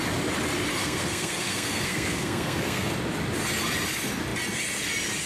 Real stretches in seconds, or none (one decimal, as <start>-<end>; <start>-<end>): 0.0-0.8; 2.9-5.3